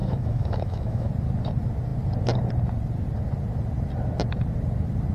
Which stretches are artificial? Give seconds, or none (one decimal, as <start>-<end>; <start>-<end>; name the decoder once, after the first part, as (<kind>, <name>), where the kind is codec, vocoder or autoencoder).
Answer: 0.0-1.1 (autoencoder, DAC-VAE)